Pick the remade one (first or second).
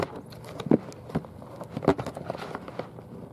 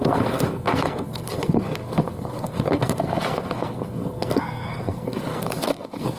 second